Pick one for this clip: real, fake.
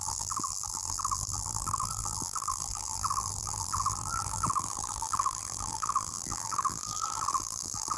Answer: fake